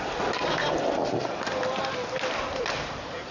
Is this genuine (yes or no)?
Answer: yes